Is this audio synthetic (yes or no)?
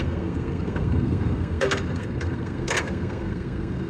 yes